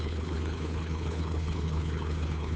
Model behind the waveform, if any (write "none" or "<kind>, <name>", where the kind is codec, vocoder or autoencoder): codec, HILCodec